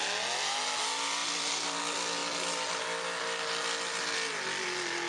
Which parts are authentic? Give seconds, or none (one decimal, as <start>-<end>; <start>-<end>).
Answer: 0.0-1.2; 1.8-5.1